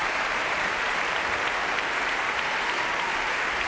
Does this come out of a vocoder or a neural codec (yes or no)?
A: yes